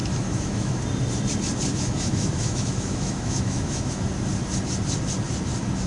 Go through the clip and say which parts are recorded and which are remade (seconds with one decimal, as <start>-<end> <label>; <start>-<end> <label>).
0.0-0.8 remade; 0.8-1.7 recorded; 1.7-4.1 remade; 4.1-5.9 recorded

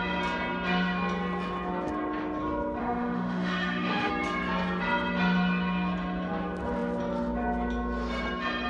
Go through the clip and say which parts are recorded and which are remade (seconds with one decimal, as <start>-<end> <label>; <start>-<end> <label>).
0.0-2.8 recorded; 2.8-4.1 remade; 4.1-8.7 recorded

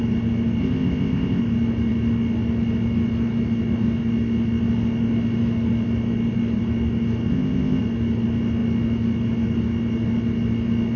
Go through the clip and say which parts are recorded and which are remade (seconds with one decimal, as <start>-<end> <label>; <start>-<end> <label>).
0.0-0.6 recorded; 0.6-1.4 remade; 1.4-7.3 recorded; 7.3-7.8 remade; 7.8-11.0 recorded

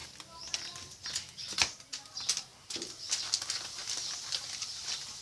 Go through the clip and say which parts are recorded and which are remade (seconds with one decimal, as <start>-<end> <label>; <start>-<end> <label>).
0.0-5.2 recorded

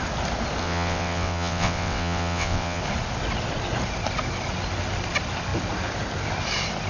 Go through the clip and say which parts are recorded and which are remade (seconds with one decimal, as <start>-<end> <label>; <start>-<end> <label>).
0.0-0.6 recorded; 0.6-2.8 remade; 2.8-6.9 recorded

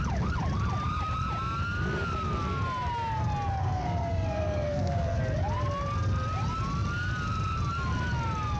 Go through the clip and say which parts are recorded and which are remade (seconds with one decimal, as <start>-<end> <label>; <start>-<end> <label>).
0.0-3.6 recorded; 3.6-5.2 remade; 5.2-8.6 recorded